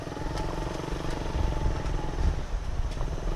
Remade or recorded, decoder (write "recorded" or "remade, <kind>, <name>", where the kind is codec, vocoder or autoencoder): remade, vocoder, BigVGAN v2